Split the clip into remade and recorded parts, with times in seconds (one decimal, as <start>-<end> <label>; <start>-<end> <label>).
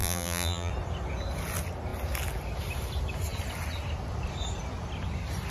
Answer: 0.0-0.7 remade; 0.7-5.5 recorded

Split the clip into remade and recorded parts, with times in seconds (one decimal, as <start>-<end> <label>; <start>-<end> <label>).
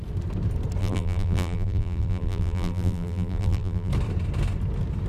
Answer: 0.0-0.8 recorded; 0.8-3.9 remade; 3.9-5.1 recorded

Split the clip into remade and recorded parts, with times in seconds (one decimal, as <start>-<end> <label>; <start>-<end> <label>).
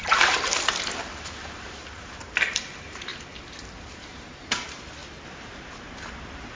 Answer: 0.0-3.1 remade; 3.1-3.8 recorded; 3.8-5.0 remade; 5.0-6.5 recorded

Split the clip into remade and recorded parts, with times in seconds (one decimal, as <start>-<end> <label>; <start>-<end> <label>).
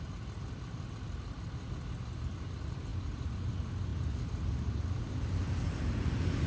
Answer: 0.0-2.9 recorded; 2.9-3.5 remade; 3.5-3.9 recorded; 3.9-4.7 remade; 4.7-6.5 recorded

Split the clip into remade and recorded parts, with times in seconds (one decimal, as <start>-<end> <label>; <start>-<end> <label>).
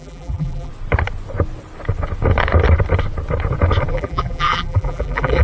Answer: 0.0-0.7 remade; 0.7-3.9 recorded; 3.9-5.4 remade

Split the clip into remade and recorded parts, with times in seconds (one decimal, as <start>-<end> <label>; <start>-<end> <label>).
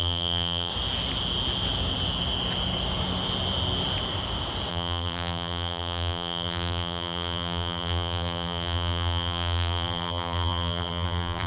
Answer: 0.0-0.7 remade; 0.7-4.7 recorded; 4.7-11.5 remade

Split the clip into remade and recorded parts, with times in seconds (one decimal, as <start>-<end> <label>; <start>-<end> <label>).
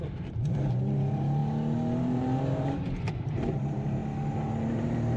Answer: 0.0-1.4 remade; 1.4-2.0 recorded; 2.0-4.0 remade; 4.0-4.7 recorded; 4.7-5.2 remade